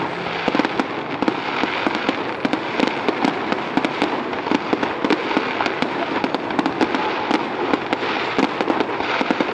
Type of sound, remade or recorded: recorded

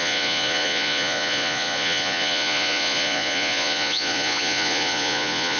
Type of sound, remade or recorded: remade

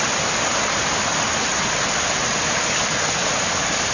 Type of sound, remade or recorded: recorded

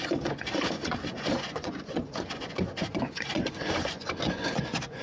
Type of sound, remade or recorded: remade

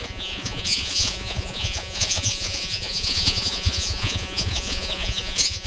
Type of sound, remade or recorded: remade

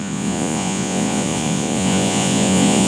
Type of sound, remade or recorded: remade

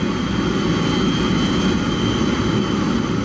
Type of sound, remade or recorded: recorded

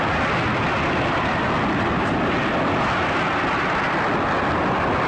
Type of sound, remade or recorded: recorded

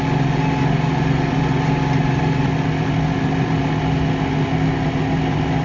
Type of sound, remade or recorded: recorded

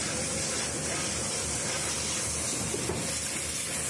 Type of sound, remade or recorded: recorded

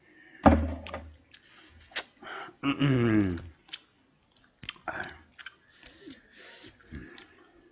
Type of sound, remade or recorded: recorded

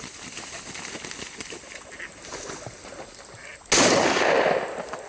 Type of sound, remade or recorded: recorded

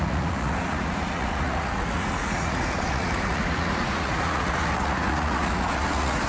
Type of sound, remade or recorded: remade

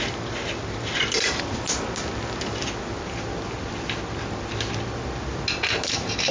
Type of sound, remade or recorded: recorded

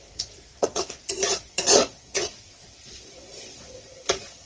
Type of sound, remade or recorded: remade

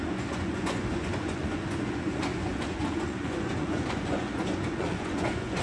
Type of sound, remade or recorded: remade